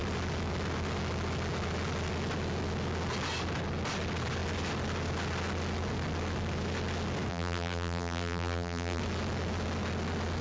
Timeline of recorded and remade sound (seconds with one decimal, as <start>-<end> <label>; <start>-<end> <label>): 0.0-7.3 recorded; 7.3-9.0 remade; 9.0-10.4 recorded